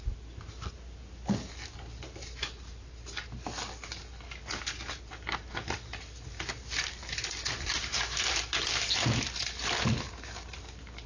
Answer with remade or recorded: recorded